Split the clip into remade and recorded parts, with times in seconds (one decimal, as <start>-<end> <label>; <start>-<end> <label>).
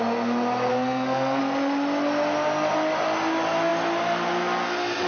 0.0-0.7 recorded; 0.7-1.4 remade; 1.4-5.1 recorded